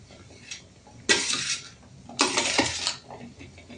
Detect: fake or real real